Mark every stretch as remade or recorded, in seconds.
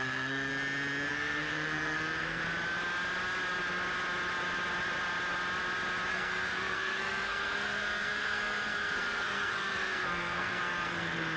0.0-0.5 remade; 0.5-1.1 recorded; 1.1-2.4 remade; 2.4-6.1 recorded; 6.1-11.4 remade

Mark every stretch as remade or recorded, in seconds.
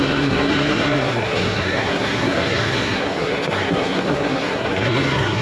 0.0-5.4 remade